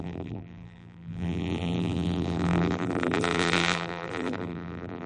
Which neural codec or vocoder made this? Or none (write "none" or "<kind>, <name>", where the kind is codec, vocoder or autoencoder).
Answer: vocoder, BigVGAN v2